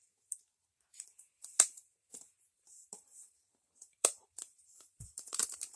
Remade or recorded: remade